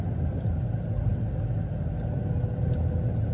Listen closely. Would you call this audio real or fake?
real